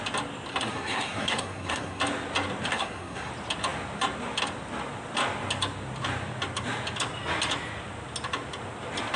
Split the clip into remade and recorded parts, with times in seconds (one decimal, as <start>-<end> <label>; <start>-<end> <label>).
0.0-0.5 recorded; 0.5-2.0 remade; 2.0-2.7 recorded; 2.7-3.3 remade; 3.3-9.2 recorded